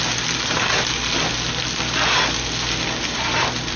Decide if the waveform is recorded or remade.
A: recorded